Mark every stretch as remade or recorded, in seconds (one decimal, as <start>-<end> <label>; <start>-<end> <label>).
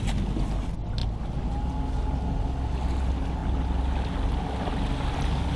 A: 0.0-5.6 recorded